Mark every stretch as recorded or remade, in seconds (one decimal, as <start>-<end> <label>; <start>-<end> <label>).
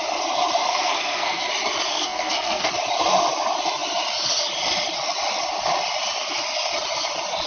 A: 0.0-0.6 recorded; 0.6-1.5 remade; 1.5-1.9 recorded; 1.9-2.7 remade; 2.7-7.5 recorded